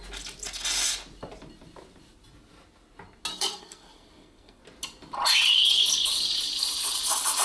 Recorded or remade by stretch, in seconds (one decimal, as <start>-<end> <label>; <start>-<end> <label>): 0.0-3.3 recorded; 3.3-4.6 remade; 4.6-7.4 recorded